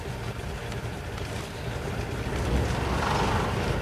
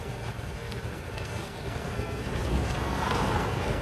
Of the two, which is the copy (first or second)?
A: second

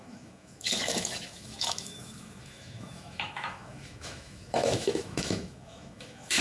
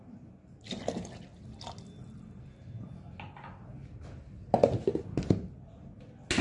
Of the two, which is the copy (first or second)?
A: first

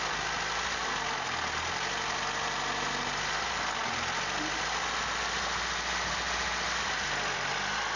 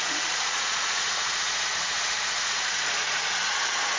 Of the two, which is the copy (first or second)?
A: second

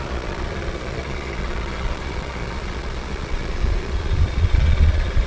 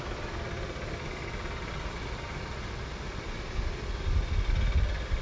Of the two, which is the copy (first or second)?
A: first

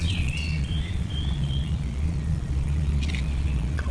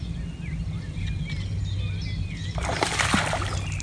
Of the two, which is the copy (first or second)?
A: first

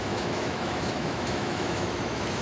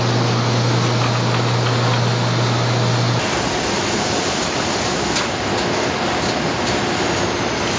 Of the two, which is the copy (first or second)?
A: first